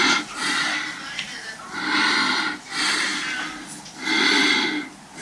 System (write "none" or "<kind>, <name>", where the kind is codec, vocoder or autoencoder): none